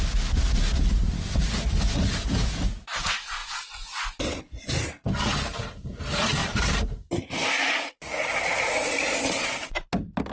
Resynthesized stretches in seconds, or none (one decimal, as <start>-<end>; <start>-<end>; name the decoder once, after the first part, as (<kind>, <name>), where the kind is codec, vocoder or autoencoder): 6.4-7.9 (vocoder, BigVGAN v2)